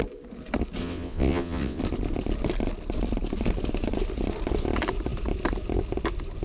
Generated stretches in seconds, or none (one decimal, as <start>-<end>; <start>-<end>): 0.8-1.8